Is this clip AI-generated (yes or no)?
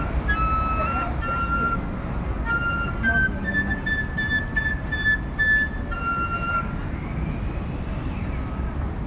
no